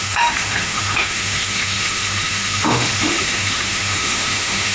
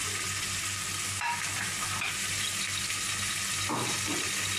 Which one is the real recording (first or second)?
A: second